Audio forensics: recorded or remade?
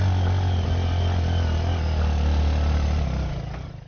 recorded